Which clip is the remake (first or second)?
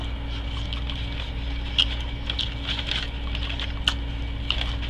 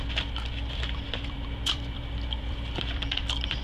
second